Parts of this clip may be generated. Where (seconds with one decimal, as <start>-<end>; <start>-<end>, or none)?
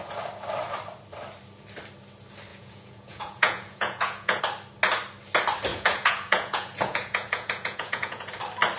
2.5-4.4; 5.7-8.3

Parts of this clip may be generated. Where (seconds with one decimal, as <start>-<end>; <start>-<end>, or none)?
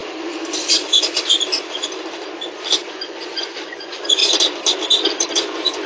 2.8-4.2; 5.3-5.9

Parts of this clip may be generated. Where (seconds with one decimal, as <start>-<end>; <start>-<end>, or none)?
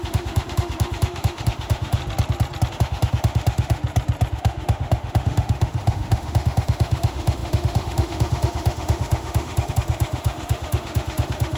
0.0-2.0; 2.7-3.8; 4.3-11.6